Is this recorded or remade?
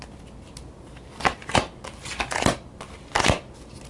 recorded